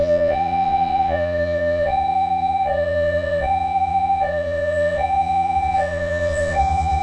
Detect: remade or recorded remade